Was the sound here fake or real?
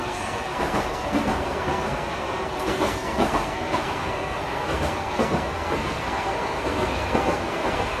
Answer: fake